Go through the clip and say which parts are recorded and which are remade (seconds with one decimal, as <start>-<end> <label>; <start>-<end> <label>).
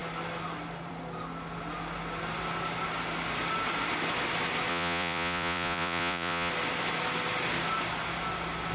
0.0-4.7 recorded; 4.7-6.5 remade; 6.5-8.7 recorded